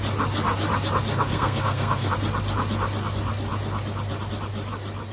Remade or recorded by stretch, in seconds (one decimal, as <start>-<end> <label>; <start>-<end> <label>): 0.0-1.1 recorded; 1.1-2.1 remade; 2.1-5.1 recorded